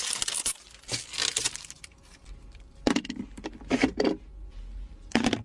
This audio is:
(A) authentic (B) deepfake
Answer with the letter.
A